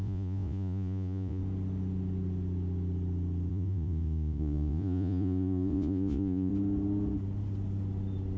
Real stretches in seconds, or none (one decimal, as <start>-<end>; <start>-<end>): 1.4-3.5; 6.5-8.4

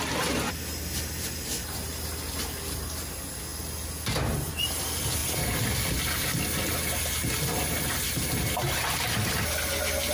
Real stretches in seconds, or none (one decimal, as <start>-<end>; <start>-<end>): 0.0-5.2; 6.0-10.1

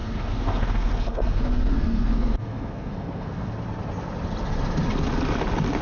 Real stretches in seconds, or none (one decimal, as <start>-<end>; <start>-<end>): 3.5-5.8